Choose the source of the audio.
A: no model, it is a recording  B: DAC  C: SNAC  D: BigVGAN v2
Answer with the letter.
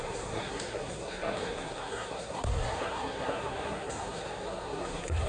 C